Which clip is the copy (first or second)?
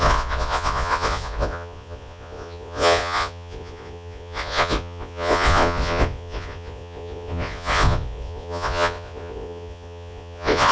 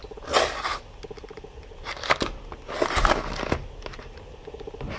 first